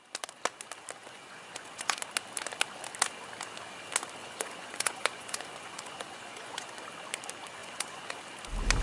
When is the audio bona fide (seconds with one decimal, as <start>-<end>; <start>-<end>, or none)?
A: 0.0-1.0; 2.0-4.2; 6.7-7.6; 8.2-8.8